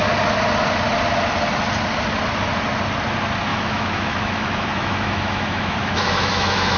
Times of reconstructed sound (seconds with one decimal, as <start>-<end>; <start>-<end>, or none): 3.5-6.8